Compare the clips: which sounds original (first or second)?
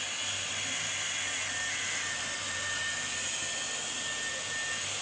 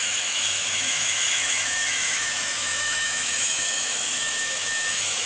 first